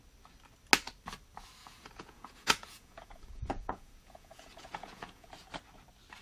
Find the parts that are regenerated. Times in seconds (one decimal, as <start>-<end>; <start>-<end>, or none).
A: 1.6-5.3